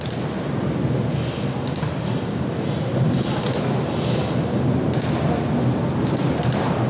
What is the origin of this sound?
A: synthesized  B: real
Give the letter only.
B